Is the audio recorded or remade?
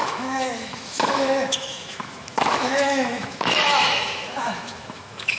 remade